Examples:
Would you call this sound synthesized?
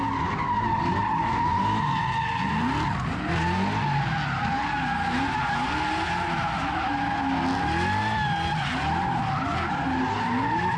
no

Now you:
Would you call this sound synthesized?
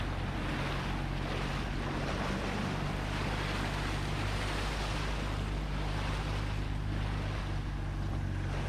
no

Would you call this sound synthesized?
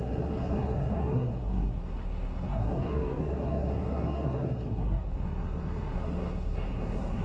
yes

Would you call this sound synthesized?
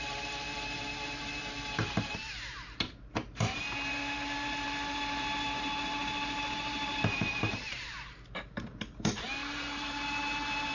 yes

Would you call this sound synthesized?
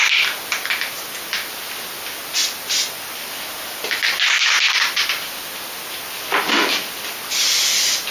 no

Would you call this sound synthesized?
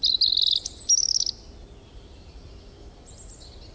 no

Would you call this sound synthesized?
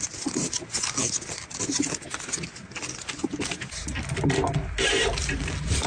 no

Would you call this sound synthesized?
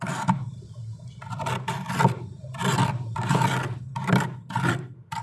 yes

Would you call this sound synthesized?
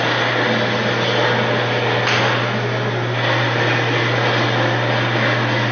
no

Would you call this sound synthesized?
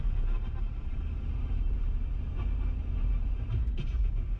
no